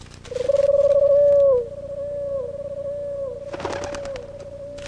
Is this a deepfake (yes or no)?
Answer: no